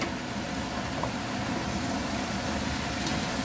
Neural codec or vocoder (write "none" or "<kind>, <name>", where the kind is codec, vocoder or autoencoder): none